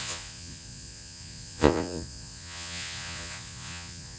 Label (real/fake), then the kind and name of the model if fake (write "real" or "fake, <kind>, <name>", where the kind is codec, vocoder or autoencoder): fake, vocoder, Vocos